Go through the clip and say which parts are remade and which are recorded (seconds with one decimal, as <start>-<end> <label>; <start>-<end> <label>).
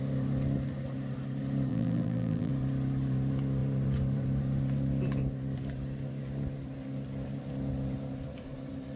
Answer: 0.0-1.7 recorded; 1.7-2.5 remade; 2.5-9.0 recorded